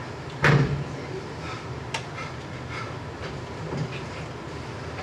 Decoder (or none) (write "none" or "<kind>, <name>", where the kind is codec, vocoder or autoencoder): none